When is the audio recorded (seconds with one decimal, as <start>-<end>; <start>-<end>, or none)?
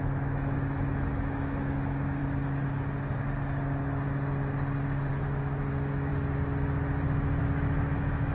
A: 2.2-5.1; 6.1-7.4